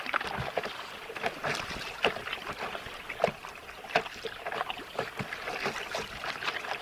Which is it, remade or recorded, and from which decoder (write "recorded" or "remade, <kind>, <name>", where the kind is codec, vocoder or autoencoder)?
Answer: recorded